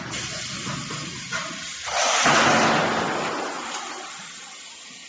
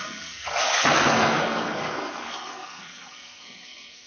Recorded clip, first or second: first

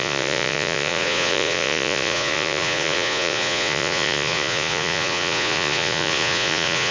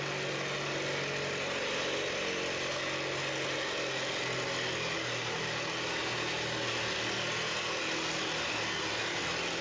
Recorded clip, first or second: second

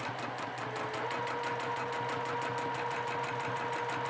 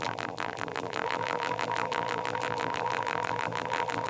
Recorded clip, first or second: first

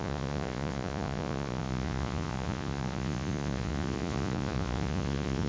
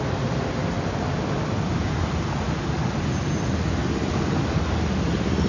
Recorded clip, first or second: second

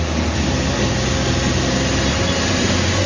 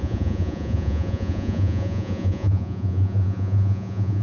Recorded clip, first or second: first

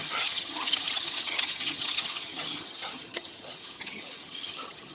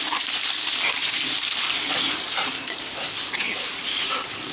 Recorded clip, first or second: second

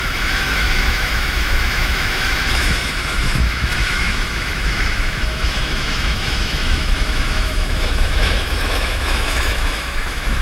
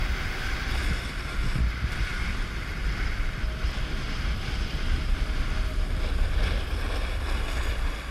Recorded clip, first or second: second